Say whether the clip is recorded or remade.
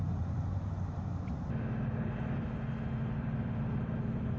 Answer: recorded